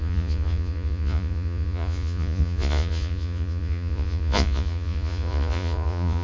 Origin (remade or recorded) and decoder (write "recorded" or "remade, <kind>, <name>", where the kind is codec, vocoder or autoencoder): remade, vocoder, Vocos